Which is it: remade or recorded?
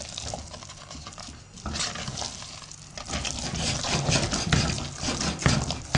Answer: recorded